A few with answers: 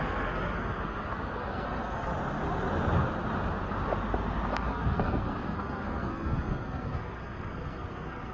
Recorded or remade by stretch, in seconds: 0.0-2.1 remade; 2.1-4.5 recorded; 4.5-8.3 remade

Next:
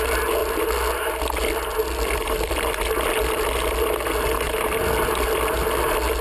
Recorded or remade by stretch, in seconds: 0.0-6.2 recorded

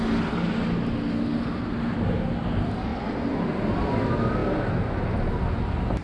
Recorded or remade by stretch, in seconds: 0.0-6.0 recorded

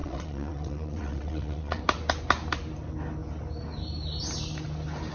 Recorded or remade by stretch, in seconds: 0.0-1.8 remade; 1.8-5.1 recorded

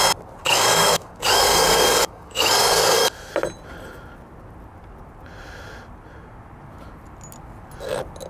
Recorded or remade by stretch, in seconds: 0.0-0.4 recorded; 0.4-3.3 remade; 3.3-8.3 recorded

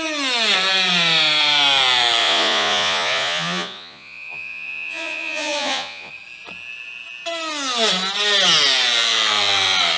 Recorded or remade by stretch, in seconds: 0.0-2.2 recorded; 2.2-6.1 remade; 6.1-10.0 recorded

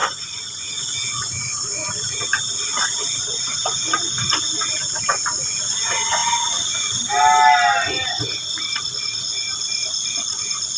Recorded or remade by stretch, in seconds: 0.0-0.6 remade; 0.6-10.8 recorded

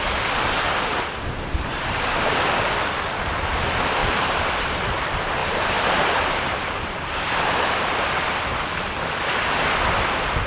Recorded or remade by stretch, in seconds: 0.0-1.7 recorded; 1.7-2.3 remade; 2.3-4.0 recorded; 4.0-4.9 remade; 4.9-5.4 recorded; 5.4-8.4 remade; 8.4-10.5 recorded